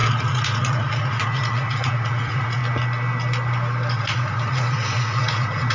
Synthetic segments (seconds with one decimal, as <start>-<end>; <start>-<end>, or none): 0.0-2.6; 3.9-5.7